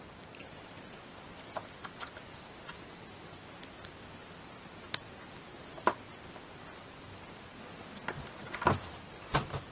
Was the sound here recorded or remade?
recorded